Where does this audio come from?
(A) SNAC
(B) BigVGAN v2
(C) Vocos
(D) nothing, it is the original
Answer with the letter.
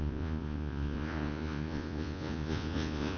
C